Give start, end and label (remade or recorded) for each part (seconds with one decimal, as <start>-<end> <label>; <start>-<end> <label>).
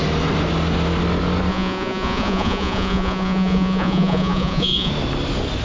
0.0-1.5 recorded; 1.5-4.9 remade; 4.9-5.6 recorded